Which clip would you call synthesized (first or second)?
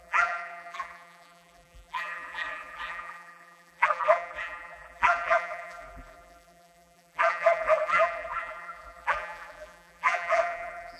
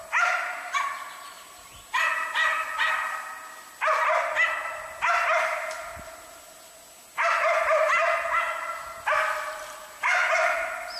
first